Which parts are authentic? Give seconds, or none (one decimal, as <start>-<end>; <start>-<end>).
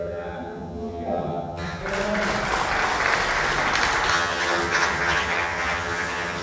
1.8-4.1